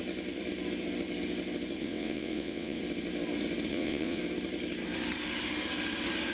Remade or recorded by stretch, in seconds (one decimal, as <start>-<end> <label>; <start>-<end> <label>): 0.0-1.8 recorded; 1.8-2.8 remade; 2.8-3.7 recorded; 3.7-4.2 remade; 4.2-6.3 recorded